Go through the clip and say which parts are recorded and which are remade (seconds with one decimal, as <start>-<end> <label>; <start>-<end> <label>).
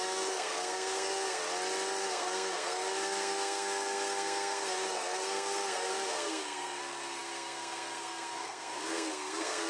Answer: 0.0-1.4 remade; 1.4-2.0 recorded; 2.0-9.7 remade